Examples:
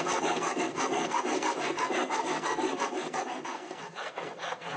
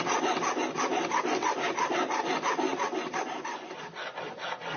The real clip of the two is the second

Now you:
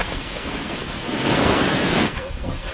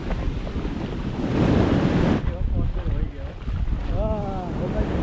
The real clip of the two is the second